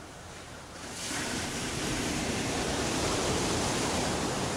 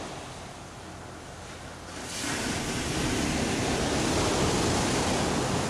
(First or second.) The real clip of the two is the second